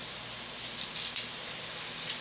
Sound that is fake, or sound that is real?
real